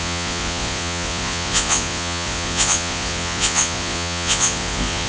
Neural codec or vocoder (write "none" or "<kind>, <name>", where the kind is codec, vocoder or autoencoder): vocoder, Vocos